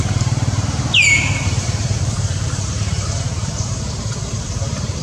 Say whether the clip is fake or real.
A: fake